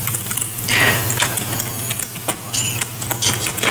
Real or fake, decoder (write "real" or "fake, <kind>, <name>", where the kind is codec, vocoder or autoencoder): real